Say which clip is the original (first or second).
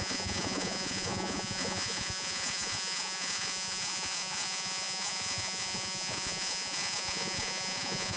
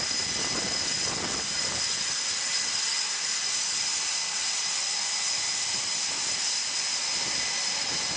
second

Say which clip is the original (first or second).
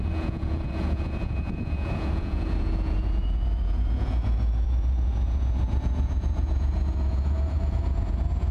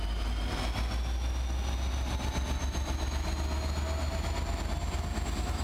second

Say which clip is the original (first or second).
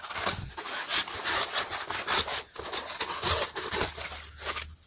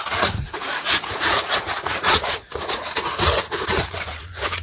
first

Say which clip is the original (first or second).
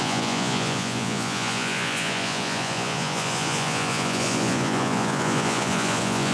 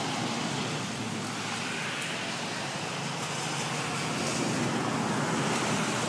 second